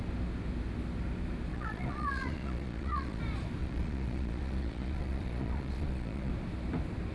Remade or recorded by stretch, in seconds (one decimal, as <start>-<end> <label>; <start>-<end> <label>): 0.0-1.5 recorded; 1.5-3.2 remade; 3.2-3.6 recorded; 3.6-6.3 remade; 6.3-7.1 recorded